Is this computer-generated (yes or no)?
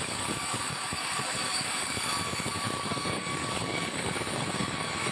yes